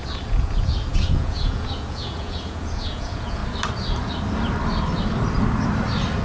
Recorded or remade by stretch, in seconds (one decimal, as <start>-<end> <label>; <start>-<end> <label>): 0.0-3.4 remade; 3.4-6.2 recorded